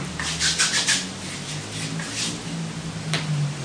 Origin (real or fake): real